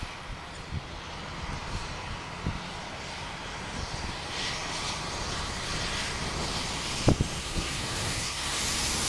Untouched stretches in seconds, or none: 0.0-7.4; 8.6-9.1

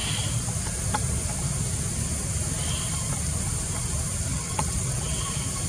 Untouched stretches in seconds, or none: 0.0-4.3; 5.2-5.7